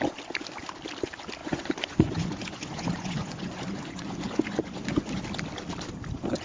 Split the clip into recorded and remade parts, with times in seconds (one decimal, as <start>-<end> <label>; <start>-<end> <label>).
0.0-1.4 recorded; 1.4-5.2 remade; 5.2-6.4 recorded